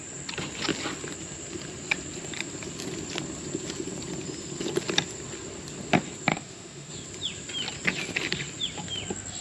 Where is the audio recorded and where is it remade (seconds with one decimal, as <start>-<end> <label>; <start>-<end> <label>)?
0.0-6.3 recorded; 6.3-6.9 remade; 6.9-9.4 recorded